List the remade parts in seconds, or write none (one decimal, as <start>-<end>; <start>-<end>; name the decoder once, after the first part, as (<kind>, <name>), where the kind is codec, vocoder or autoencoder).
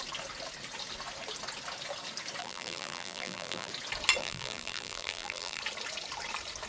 2.4-3.7 (vocoder, BigVGAN v2); 4.2-5.6